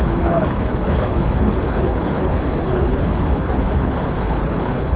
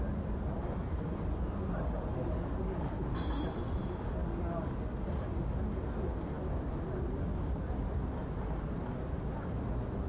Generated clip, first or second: first